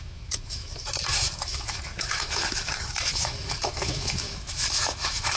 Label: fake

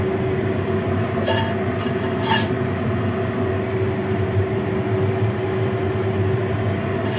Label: real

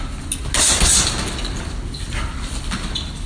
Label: real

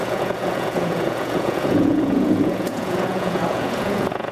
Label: fake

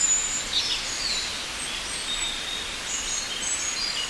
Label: real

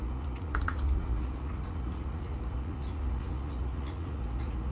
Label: fake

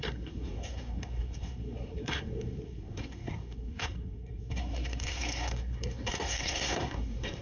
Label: fake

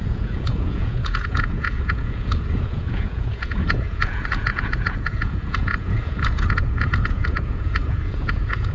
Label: fake